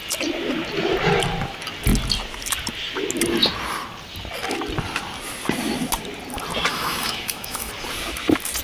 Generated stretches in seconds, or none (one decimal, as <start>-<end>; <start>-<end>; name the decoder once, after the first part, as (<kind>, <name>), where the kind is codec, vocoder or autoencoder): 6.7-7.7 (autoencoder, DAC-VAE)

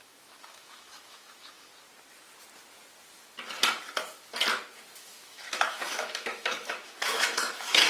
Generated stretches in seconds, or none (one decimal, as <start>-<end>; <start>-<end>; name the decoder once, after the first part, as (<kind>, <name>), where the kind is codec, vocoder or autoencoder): 0.0-1.7 (autoencoder, DAC-VAE); 5.0-7.9

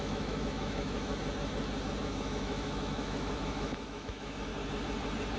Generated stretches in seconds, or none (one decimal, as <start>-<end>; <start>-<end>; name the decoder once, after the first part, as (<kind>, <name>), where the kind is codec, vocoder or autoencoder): 0.0-1.2 (autoencoder, DAC-VAE); 2.0-4.5

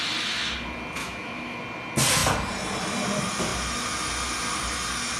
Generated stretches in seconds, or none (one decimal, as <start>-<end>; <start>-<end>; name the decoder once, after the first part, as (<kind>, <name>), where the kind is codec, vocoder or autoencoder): 1.0-1.6 (autoencoder, DAC-VAE)

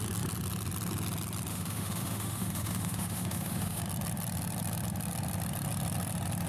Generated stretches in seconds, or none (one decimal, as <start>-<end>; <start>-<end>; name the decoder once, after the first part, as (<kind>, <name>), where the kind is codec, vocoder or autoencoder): 1.5-3.8 (autoencoder, DAC-VAE)